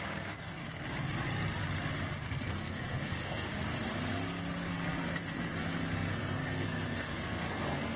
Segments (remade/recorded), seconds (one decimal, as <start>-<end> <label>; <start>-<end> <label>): 0.0-0.6 remade; 0.6-2.3 recorded; 2.3-3.5 remade; 3.5-4.7 recorded; 4.7-8.0 remade